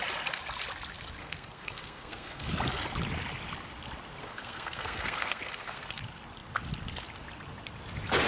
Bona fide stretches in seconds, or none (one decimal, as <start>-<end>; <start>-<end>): 0.0-1.2; 2.5-4.2; 6.0-8.3